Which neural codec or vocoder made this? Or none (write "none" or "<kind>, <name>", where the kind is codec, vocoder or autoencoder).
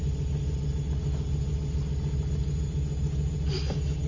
none